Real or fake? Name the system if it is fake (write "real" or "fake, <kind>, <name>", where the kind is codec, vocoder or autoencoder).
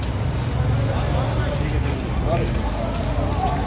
real